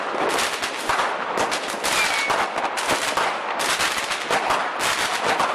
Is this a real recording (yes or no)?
yes